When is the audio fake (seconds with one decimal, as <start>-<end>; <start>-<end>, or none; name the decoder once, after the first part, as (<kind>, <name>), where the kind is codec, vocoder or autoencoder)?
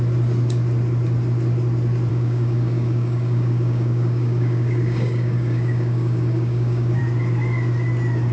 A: 2.1-7.0 (codec, DAC)